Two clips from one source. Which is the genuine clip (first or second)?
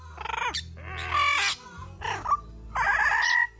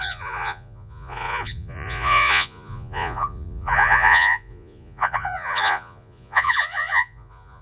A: first